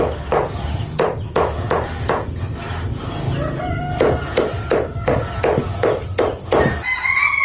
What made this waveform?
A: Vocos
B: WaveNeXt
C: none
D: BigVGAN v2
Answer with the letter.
C